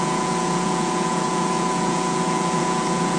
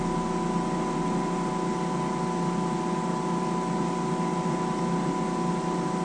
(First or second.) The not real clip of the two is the first